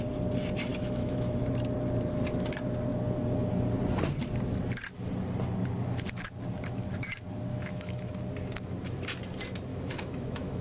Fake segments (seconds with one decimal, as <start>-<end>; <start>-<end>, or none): 0.7-1.4; 7.5-8.1; 9.7-10.6